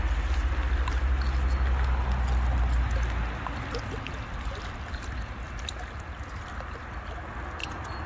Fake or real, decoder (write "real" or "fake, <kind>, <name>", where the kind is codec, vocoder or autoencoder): real